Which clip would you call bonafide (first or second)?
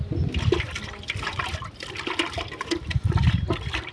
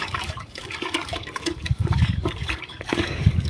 first